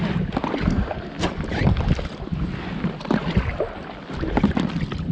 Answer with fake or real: real